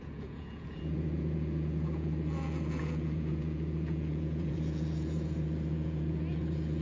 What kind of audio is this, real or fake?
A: fake